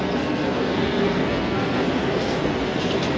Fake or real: fake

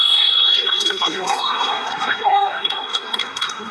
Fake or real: fake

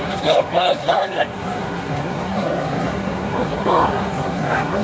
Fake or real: fake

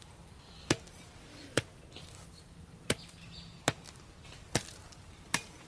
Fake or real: real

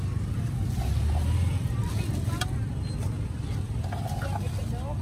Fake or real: real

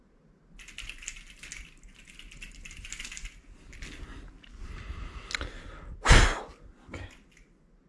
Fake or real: real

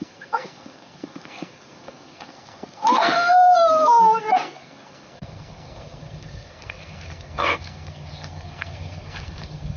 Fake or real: fake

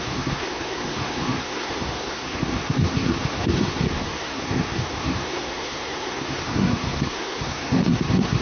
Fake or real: fake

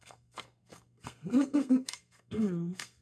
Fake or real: fake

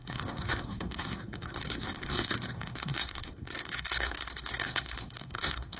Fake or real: fake